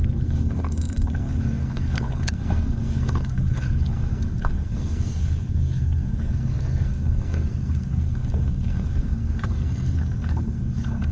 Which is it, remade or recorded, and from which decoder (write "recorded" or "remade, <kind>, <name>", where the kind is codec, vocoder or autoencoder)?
remade, codec, SNAC